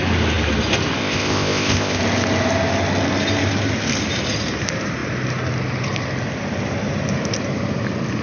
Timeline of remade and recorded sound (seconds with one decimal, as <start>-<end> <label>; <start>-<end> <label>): 0.0-1.0 recorded; 1.0-2.0 remade; 2.0-8.2 recorded